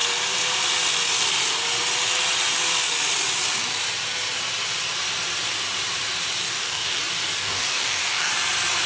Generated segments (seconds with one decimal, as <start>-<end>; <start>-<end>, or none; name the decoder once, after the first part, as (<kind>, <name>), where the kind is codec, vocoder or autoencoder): 6.4-7.0 (codec, DAC); 7.4-8.3

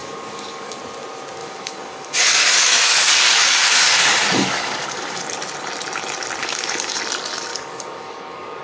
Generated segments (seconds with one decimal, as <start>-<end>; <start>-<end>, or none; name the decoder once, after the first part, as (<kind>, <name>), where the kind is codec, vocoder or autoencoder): 0.0-0.8 (codec, DAC); 1.4-5.2; 6.4-7.0; 7.5-8.6

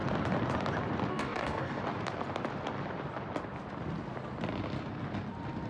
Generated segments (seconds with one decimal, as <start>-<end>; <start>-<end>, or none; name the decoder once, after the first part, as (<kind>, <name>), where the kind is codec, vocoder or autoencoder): 1.1-1.8 (codec, DAC)